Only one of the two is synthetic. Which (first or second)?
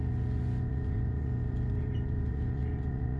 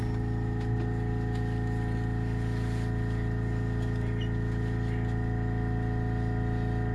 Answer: first